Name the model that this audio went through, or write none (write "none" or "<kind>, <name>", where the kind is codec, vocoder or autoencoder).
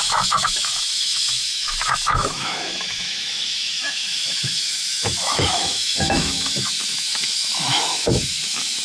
autoencoder, DAC-VAE